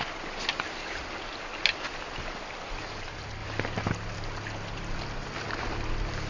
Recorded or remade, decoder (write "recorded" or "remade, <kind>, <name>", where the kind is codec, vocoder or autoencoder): recorded